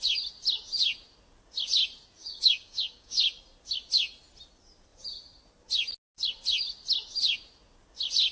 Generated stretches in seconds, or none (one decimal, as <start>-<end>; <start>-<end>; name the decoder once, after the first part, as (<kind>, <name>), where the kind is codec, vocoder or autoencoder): 2.2-3.2 (codec, DAC)